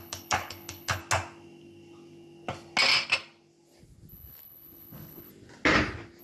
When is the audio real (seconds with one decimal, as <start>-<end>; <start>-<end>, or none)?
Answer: 1.0-4.1; 5.3-6.2